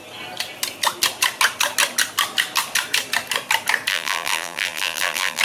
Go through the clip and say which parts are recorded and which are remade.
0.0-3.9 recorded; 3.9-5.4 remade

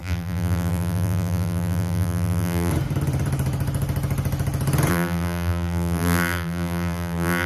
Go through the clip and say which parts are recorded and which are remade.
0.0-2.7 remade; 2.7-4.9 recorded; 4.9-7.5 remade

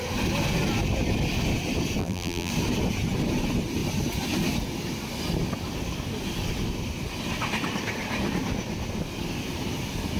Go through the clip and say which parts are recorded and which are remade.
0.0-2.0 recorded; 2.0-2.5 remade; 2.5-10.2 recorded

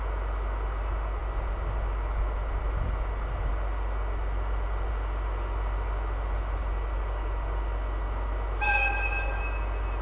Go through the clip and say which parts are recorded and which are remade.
0.0-10.0 recorded

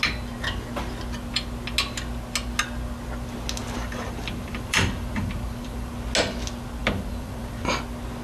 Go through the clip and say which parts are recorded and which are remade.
0.0-3.6 recorded; 3.6-5.9 remade; 5.9-6.8 recorded; 6.8-7.6 remade; 7.6-8.2 recorded

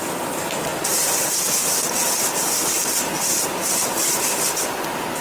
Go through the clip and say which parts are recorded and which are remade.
0.0-5.2 recorded

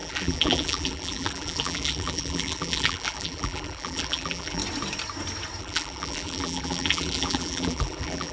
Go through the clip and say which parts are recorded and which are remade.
0.0-4.6 remade; 4.6-5.6 recorded; 5.6-8.3 remade